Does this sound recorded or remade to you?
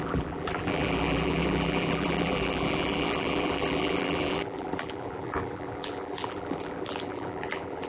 remade